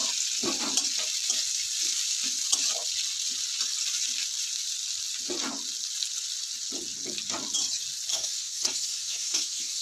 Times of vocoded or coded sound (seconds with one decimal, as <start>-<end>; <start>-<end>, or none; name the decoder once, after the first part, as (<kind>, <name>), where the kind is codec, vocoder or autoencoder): 8.1-9.8 (codec, SNAC)